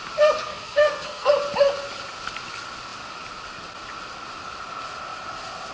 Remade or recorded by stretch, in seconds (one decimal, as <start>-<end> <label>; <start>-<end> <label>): 0.0-0.4 recorded; 0.4-1.3 remade; 1.3-5.7 recorded